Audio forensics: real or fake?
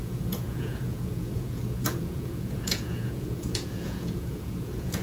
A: fake